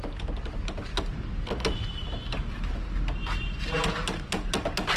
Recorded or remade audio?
recorded